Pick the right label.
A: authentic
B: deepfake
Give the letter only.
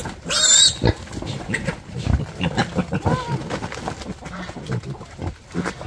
A